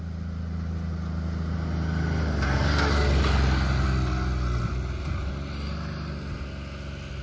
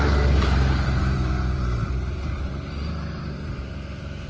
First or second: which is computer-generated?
second